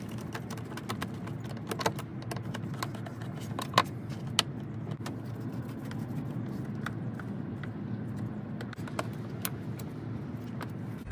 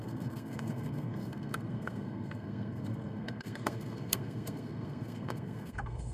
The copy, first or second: second